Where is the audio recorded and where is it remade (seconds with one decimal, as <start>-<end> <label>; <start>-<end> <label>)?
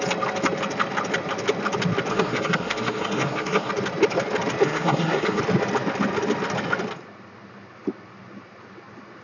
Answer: 0.0-2.1 recorded; 2.1-3.7 remade; 3.7-4.6 recorded; 4.6-5.4 remade; 5.4-9.2 recorded